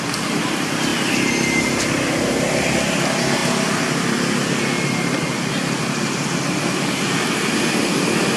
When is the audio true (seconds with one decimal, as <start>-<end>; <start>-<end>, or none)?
0.0-8.4